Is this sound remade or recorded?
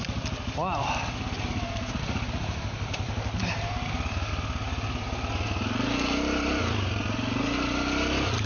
recorded